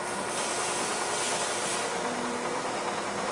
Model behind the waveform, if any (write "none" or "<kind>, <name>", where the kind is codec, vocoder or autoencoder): none